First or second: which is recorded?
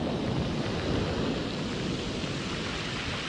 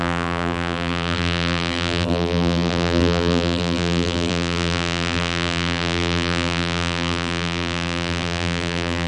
first